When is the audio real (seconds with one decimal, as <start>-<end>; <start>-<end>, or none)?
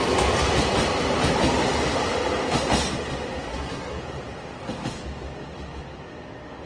0.0-3.5; 4.0-6.7